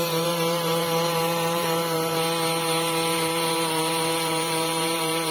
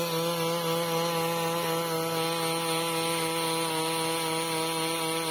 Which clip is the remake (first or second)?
first